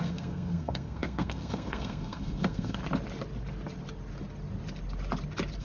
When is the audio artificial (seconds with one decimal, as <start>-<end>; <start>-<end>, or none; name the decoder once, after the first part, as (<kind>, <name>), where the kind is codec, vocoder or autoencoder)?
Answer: 0.0-2.8 (codec, SNAC)